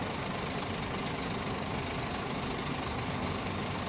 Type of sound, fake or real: real